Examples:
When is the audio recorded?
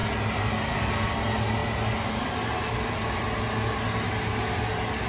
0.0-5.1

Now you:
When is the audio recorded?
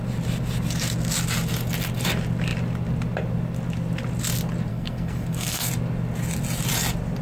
0.0-4.7; 5.7-7.2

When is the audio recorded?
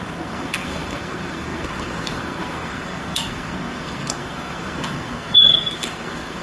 none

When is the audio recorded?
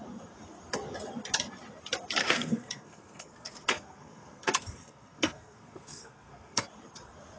0.0-2.2; 6.6-7.4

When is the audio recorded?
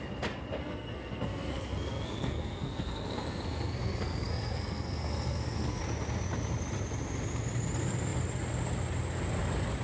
0.0-0.6; 5.8-9.8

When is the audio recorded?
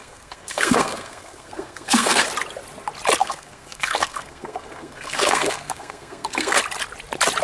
2.3-3.2; 6.6-7.4